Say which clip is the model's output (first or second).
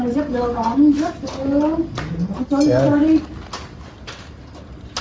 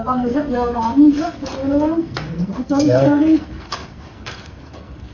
second